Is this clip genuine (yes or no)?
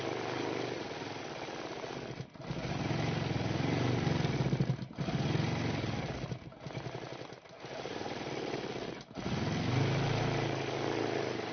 yes